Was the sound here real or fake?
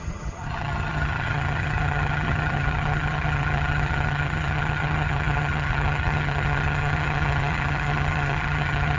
fake